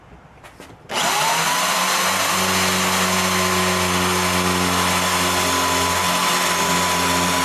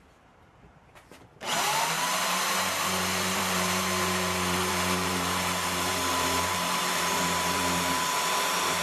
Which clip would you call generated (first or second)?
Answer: second